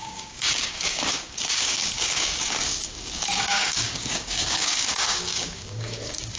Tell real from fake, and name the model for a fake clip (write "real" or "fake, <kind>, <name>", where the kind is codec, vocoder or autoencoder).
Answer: fake, codec, DAC